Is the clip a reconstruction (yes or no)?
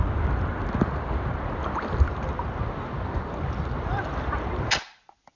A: no